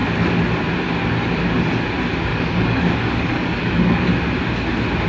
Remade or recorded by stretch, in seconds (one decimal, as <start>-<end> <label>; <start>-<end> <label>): 0.0-2.3 recorded; 2.3-4.0 remade; 4.0-5.1 recorded